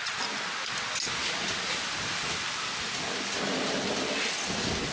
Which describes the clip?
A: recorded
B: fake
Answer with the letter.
A